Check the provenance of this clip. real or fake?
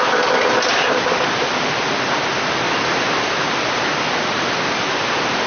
real